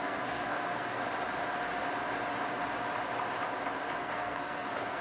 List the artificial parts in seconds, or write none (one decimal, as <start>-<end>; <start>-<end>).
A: 0.0-1.0; 4.0-5.0